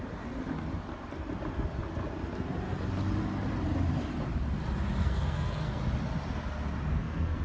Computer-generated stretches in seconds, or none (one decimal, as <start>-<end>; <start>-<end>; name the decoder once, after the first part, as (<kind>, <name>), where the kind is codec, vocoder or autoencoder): 5.0-5.8 (codec, SNAC); 6.9-7.4